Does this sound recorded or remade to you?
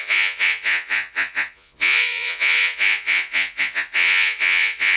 remade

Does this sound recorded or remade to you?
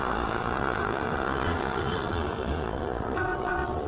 remade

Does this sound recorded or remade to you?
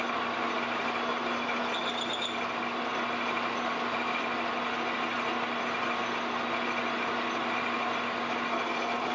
recorded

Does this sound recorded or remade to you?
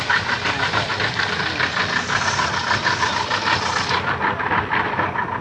recorded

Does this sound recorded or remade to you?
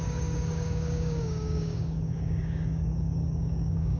remade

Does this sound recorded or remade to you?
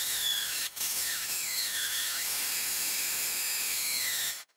remade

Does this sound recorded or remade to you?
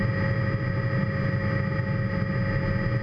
recorded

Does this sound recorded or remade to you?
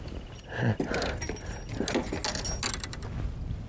recorded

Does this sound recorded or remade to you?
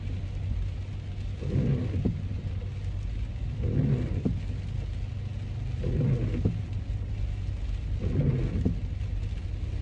recorded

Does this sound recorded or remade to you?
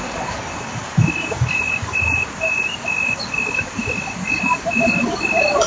recorded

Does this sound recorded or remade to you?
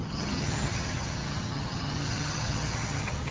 remade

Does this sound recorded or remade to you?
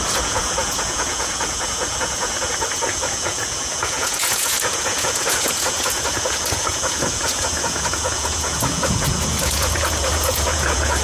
remade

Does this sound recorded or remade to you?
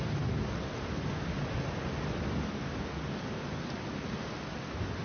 recorded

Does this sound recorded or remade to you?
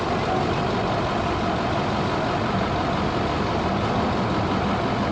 recorded